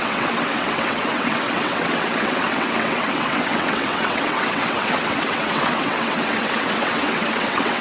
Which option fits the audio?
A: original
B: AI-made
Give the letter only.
B